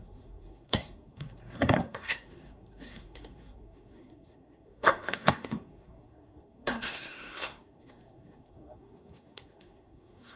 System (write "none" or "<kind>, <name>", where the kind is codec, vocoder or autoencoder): codec, SNAC